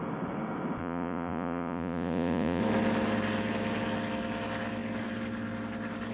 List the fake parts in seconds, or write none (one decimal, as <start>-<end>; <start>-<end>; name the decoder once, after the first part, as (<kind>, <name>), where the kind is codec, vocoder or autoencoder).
0.8-2.6 (vocoder, Vocos)